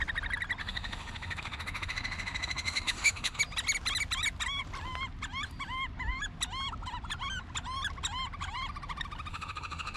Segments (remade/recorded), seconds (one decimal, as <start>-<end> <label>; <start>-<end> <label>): 0.0-0.6 recorded; 0.6-3.4 remade; 3.4-9.3 recorded; 9.3-10.0 remade